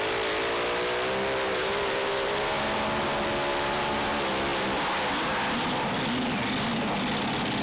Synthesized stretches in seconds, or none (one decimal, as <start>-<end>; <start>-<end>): 1.5-3.0; 3.5-4.1